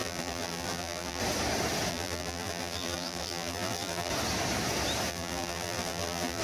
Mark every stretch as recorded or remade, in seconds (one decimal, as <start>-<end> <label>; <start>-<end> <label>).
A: 0.0-1.2 remade; 1.2-1.9 recorded; 1.9-4.1 remade; 4.1-5.1 recorded; 5.1-6.4 remade